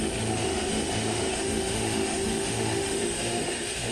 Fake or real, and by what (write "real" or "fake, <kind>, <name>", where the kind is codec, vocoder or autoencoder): fake, autoencoder, DAC-VAE